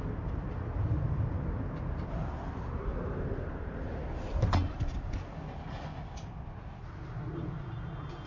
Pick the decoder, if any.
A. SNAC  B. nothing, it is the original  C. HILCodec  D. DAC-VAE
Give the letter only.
B